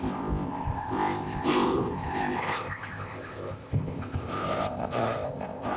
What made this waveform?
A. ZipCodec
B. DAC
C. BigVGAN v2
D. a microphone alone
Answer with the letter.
A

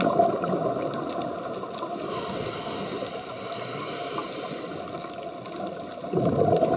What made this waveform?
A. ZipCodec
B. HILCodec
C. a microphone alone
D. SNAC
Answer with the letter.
C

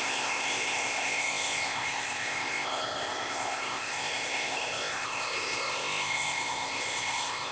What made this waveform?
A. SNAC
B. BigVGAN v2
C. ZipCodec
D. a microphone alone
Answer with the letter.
C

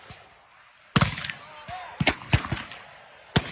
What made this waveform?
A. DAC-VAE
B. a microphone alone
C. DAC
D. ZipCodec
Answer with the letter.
B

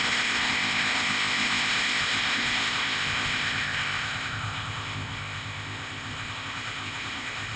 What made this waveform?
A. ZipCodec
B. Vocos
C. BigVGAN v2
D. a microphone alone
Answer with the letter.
A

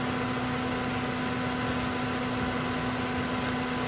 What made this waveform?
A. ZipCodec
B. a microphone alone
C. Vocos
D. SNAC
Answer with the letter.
B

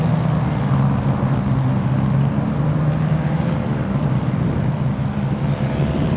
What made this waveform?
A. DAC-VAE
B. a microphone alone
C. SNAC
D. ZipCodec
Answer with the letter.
B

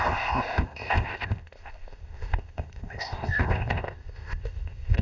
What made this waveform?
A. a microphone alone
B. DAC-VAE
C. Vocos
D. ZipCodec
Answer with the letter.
D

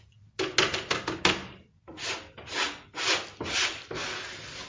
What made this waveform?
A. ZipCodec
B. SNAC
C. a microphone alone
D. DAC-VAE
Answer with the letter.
C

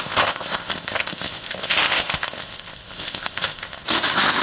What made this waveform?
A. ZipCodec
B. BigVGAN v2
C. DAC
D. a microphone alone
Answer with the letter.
A